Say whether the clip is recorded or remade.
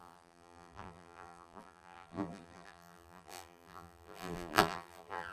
remade